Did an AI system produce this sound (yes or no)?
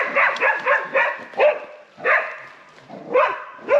no